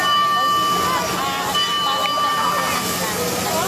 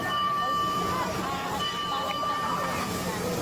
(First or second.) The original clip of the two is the first